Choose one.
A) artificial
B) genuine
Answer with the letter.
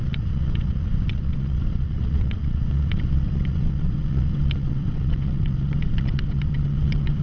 A